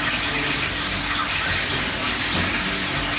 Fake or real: real